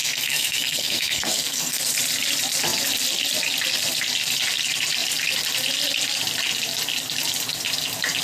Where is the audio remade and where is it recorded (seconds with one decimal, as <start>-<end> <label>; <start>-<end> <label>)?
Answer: 0.0-1.9 remade; 1.9-8.2 recorded